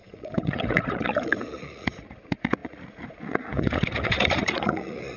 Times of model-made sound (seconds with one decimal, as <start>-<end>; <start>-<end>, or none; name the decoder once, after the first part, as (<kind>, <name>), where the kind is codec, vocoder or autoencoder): 0.0-5.2 (vocoder, Vocos)